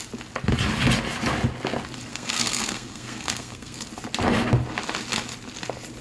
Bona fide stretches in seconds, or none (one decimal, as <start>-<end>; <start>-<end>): 0.0-2.1; 3.8-6.0